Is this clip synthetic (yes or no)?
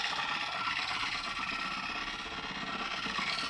no